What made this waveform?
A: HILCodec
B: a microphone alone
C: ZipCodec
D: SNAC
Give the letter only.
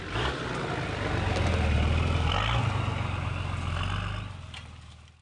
B